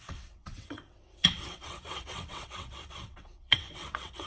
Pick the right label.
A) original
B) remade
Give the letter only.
B